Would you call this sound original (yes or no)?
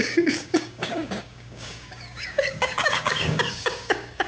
no